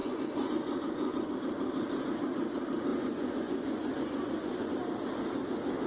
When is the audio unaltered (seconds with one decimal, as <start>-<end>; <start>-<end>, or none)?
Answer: 1.3-2.9; 4.7-5.9